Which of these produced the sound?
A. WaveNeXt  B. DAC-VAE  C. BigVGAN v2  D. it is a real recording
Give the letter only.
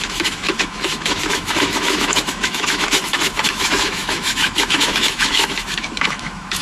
B